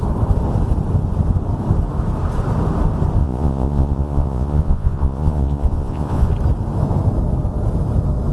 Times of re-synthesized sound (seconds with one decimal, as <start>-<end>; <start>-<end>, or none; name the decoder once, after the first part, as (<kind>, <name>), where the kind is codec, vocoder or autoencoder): 3.2-6.3 (vocoder, Vocos)